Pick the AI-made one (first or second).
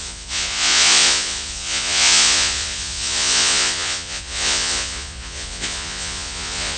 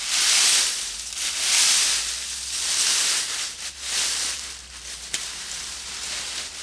first